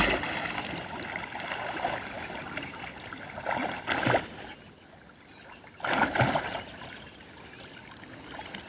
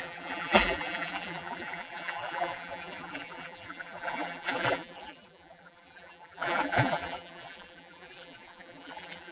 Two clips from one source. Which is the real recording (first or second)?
first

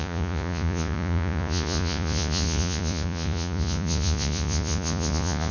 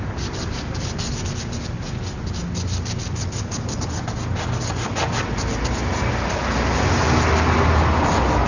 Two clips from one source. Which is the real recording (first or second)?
second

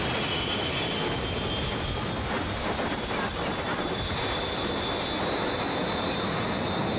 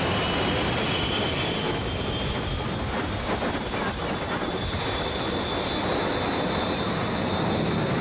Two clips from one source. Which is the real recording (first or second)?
first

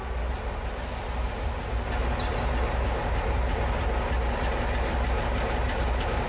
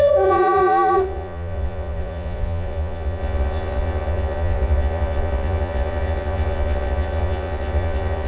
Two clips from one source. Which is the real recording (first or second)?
first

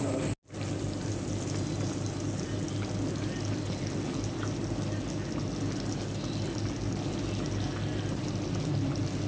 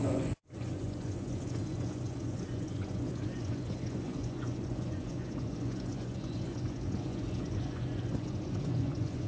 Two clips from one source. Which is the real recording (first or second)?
first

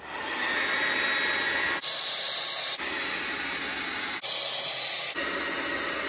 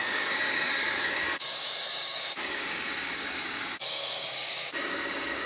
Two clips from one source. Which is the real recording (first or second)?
first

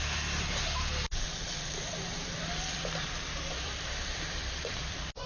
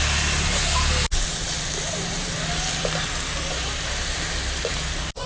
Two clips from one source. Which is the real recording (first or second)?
second